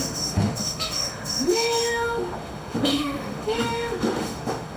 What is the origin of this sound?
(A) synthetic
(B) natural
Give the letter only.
A